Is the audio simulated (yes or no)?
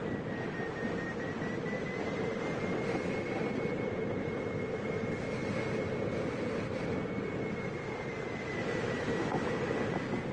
no